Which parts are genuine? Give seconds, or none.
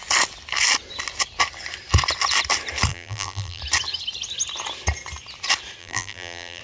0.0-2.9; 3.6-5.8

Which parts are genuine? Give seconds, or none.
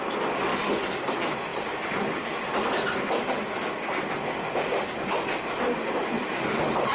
0.0-1.5; 3.4-6.9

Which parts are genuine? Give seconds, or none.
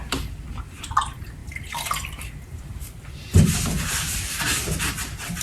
0.0-1.4; 4.4-5.4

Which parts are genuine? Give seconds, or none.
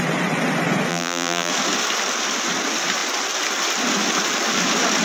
0.0-0.9; 1.5-5.0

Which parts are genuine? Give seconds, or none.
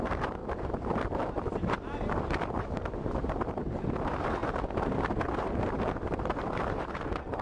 none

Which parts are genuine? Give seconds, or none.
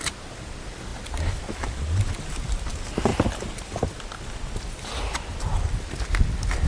0.0-6.7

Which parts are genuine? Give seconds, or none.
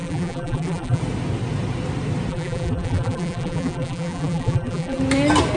1.0-2.3; 5.0-5.6